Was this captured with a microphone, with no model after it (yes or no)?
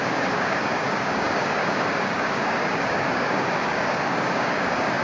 no